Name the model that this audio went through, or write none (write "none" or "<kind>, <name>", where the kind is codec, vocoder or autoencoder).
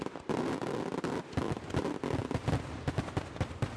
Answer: none